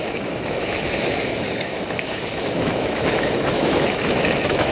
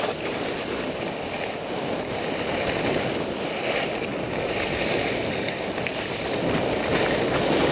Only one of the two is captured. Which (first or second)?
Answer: second